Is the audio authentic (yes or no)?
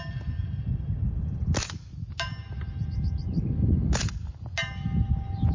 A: yes